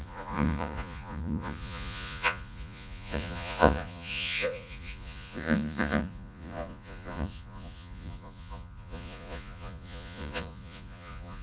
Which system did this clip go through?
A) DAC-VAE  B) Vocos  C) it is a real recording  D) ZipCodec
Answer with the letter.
B